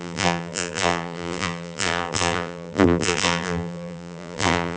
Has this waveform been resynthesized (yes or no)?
yes